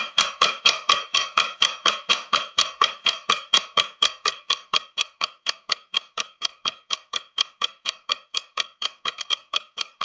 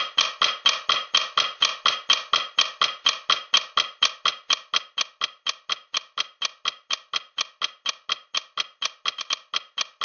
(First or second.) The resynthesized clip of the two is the first